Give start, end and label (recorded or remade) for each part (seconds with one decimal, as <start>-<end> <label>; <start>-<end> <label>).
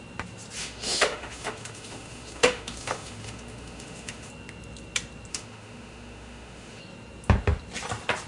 0.0-0.6 recorded; 0.6-4.3 remade; 4.3-5.3 recorded; 5.3-6.8 remade; 6.8-8.3 recorded